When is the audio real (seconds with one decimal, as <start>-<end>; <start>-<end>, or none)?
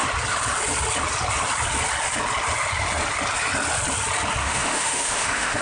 0.0-4.4